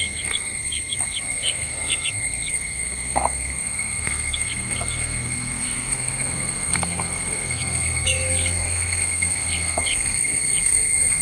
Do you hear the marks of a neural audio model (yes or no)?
yes